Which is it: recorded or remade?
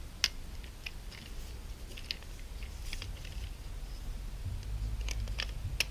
recorded